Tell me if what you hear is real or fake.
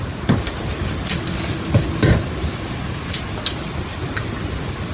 real